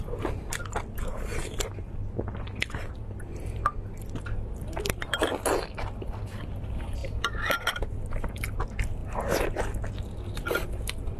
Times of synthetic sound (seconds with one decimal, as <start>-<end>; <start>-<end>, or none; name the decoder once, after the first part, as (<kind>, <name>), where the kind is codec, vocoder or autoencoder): none